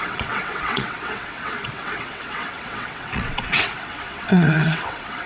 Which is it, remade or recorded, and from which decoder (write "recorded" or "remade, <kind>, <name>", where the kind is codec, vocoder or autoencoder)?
remade, vocoder, WaveNeXt